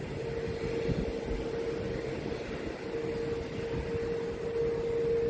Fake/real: real